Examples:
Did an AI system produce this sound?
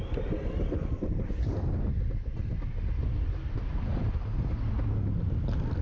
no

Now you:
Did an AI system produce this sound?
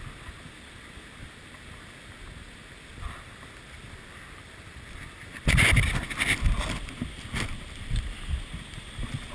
no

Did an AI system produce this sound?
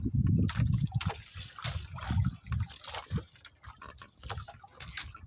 no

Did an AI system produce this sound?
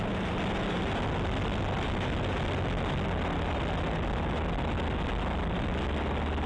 no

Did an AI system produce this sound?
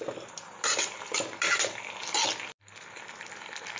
no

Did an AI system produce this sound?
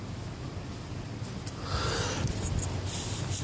no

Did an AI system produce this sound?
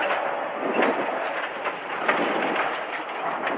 no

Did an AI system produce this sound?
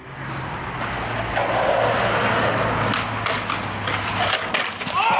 no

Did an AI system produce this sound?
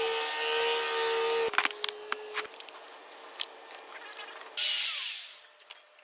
no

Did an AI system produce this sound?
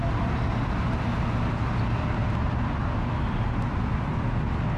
no